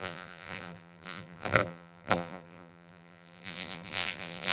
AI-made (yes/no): yes